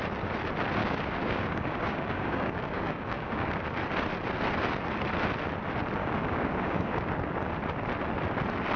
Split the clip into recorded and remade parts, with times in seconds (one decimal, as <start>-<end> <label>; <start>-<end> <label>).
0.0-0.8 recorded; 0.8-3.6 remade; 3.6-6.0 recorded; 6.0-7.1 remade; 7.1-8.8 recorded